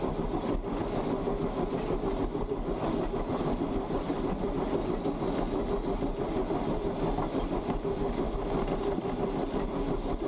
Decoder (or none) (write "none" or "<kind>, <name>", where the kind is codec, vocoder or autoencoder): none